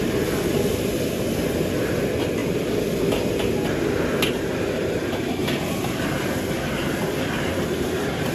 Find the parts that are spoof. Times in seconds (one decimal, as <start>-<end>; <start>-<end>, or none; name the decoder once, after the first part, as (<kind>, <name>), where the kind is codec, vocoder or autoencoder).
none